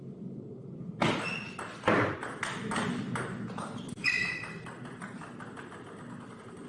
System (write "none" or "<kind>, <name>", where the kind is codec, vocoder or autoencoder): none